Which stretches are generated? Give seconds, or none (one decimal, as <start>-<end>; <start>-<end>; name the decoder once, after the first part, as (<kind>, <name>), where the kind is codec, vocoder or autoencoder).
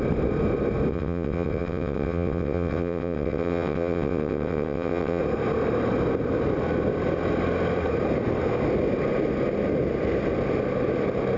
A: 0.9-5.2 (vocoder, WaveNeXt)